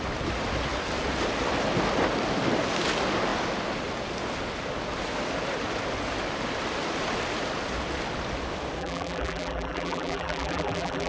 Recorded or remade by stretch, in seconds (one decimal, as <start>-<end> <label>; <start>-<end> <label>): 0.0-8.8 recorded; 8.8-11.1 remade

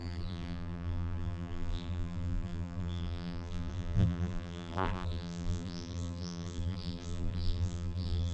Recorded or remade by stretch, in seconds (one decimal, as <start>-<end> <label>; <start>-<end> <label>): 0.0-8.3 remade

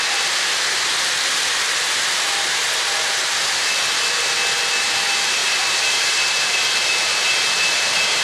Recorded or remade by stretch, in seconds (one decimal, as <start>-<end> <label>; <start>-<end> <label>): 0.0-5.4 recorded; 5.4-8.2 remade

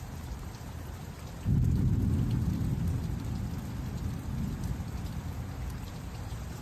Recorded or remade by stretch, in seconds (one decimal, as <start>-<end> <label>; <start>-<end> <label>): 0.0-1.9 remade; 1.9-5.9 recorded; 5.9-6.6 remade